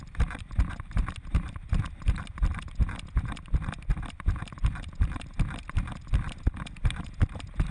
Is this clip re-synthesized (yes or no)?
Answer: no